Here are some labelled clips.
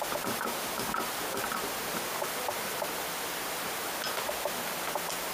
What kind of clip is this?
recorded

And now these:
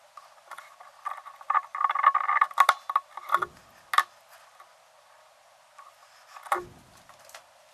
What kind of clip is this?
recorded